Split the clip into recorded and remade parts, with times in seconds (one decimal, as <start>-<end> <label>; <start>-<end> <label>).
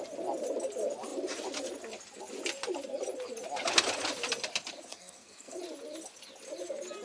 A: 0.0-4.9 recorded; 4.9-5.6 remade; 5.6-7.0 recorded